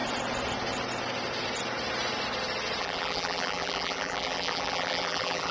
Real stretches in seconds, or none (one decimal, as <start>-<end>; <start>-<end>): 0.0-2.8